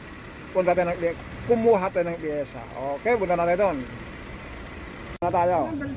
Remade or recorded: recorded